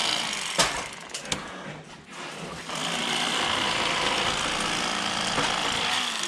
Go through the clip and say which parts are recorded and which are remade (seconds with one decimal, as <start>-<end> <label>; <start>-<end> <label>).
0.0-6.3 recorded